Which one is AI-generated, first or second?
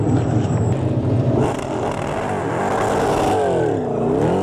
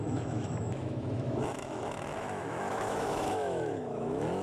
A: second